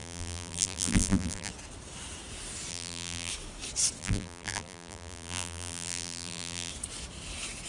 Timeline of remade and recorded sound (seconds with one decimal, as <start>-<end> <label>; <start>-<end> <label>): 0.0-1.5 remade; 1.5-2.7 recorded; 2.7-3.3 remade; 3.3-4.0 recorded; 4.0-6.7 remade; 6.7-7.7 recorded